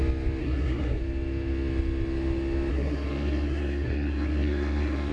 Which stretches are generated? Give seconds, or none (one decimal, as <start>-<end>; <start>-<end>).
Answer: 0.4-1.0; 2.7-5.1